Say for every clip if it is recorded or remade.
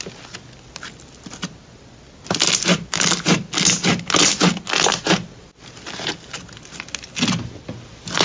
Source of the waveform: recorded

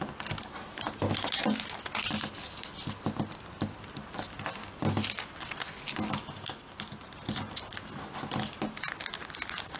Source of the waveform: recorded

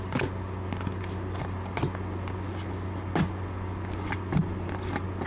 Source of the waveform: recorded